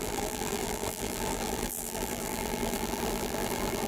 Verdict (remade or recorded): remade